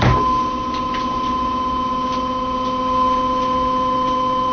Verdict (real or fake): real